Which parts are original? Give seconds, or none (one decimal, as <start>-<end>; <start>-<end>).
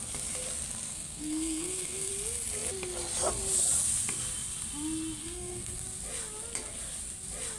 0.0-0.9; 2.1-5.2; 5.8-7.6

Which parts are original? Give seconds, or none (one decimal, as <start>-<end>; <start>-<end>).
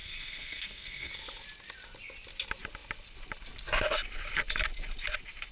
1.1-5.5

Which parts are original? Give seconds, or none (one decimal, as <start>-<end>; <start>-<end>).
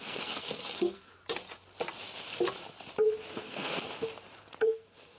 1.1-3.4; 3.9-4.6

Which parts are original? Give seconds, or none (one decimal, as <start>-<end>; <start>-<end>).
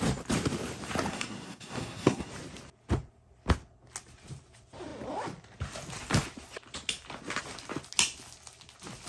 0.0-1.1; 2.3-9.1